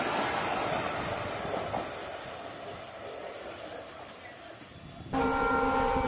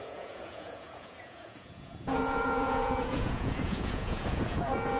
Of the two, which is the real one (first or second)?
first